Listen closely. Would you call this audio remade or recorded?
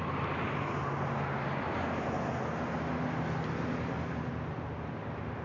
recorded